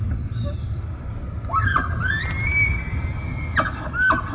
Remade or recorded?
recorded